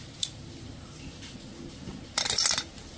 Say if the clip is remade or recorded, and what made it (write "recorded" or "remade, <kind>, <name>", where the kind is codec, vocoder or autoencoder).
recorded